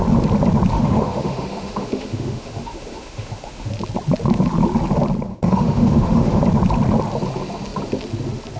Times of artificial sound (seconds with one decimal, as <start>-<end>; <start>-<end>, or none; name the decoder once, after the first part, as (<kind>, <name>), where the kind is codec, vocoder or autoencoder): 0.7-3.7 (autoencoder, DAC-VAE); 5.3-6.4